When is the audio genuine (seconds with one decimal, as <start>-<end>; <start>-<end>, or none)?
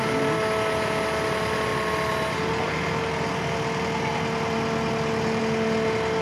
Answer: 0.0-6.2